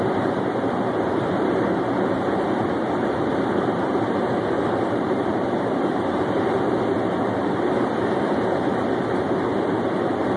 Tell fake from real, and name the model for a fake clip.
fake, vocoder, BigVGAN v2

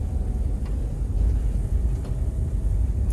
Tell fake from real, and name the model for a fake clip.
real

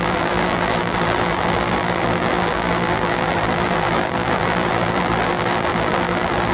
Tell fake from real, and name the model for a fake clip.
fake, vocoder, BigVGAN v2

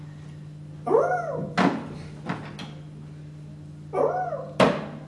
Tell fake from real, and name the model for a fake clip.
real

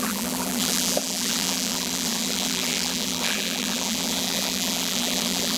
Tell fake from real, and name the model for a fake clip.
fake, vocoder, BigVGAN v2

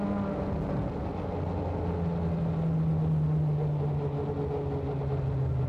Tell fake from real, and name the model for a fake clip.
real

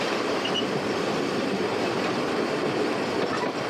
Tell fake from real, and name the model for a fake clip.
fake, vocoder, BigVGAN v2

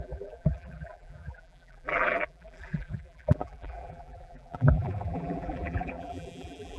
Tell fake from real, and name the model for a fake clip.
fake, vocoder, BigVGAN v2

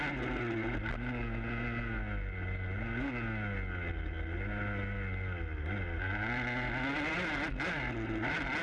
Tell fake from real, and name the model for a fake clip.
real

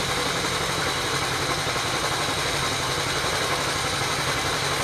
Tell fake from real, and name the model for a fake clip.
real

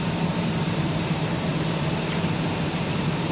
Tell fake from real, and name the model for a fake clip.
fake, vocoder, BigVGAN v2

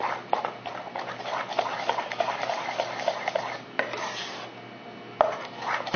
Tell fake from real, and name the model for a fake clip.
real